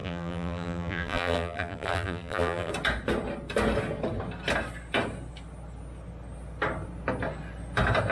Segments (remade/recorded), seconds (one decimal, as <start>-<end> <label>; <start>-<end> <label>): 0.0-2.7 remade; 2.7-8.1 recorded

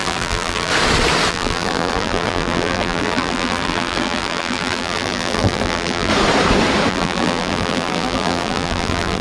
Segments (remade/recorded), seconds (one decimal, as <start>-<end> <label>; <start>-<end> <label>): 0.0-0.7 remade; 0.7-1.3 recorded; 1.3-6.1 remade; 6.1-6.9 recorded; 6.9-9.2 remade

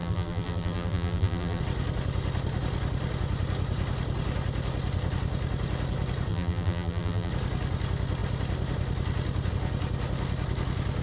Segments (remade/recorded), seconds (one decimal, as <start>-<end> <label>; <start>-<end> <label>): 0.0-1.6 remade; 1.6-6.3 recorded; 6.3-7.3 remade; 7.3-11.0 recorded

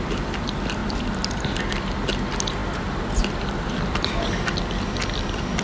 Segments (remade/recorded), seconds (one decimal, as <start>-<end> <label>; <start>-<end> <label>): 0.0-0.8 recorded; 0.8-1.4 remade; 1.4-2.6 recorded; 2.6-4.1 remade; 4.1-5.6 recorded

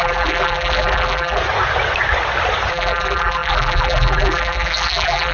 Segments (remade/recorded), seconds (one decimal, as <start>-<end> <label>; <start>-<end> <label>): 0.0-1.4 remade; 1.4-2.7 recorded; 2.7-5.3 remade

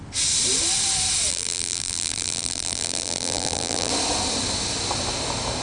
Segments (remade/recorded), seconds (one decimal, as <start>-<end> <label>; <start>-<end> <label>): 0.0-1.3 recorded; 1.3-3.9 remade; 3.9-5.6 recorded

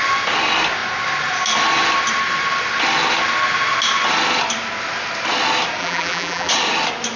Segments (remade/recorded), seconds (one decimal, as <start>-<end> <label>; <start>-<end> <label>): 0.0-5.8 recorded; 5.8-6.5 remade; 6.5-7.2 recorded

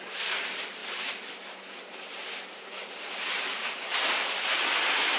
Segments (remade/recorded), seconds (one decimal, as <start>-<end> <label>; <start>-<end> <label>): 0.0-0.8 recorded; 0.8-1.3 remade; 1.3-5.2 recorded